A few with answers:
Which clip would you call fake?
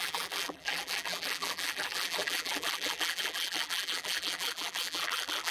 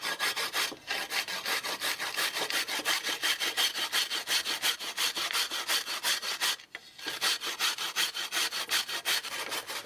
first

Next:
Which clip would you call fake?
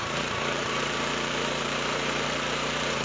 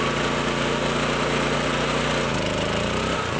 first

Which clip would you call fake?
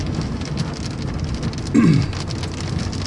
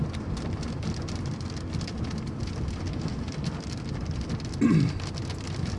second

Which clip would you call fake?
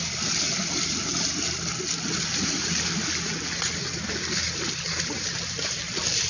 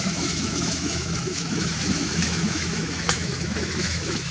second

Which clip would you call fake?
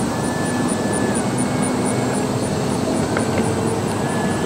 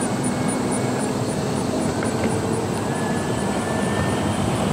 second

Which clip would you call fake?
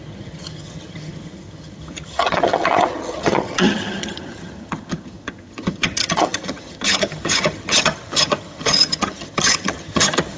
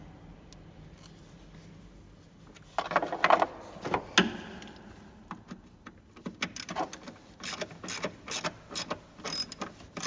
first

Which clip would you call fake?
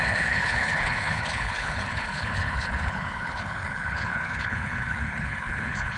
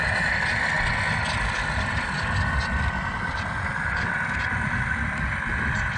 first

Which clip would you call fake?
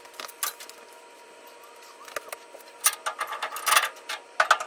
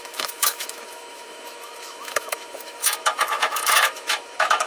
second